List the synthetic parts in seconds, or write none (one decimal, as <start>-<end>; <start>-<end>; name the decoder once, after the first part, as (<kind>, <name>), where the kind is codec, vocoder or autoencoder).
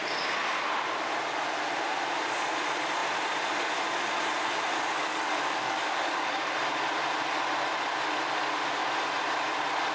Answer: 5.0-6.5 (codec, DAC)